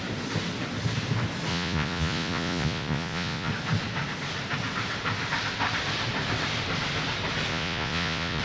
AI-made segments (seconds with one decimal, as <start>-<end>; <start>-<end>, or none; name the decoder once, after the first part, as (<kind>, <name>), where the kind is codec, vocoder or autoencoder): 1.5-3.5 (vocoder, Vocos); 7.5-8.4